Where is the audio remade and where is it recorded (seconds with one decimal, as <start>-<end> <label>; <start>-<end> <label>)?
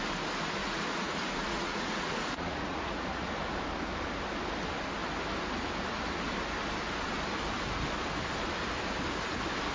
0.0-0.6 recorded; 0.6-3.3 remade; 3.3-9.7 recorded